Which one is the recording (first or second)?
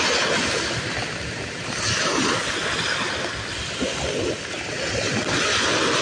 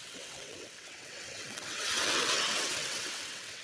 first